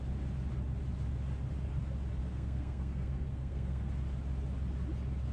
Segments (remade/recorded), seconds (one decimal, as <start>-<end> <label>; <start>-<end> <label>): 0.0-2.2 recorded; 2.2-3.9 remade; 3.9-5.3 recorded